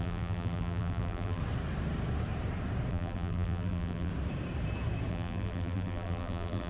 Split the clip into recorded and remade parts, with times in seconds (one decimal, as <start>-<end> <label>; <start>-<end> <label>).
0.0-1.4 remade; 1.4-2.9 recorded; 2.9-4.1 remade; 4.1-5.1 recorded; 5.1-6.7 remade